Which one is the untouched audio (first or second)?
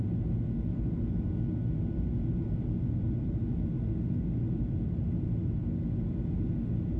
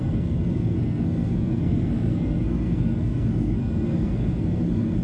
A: first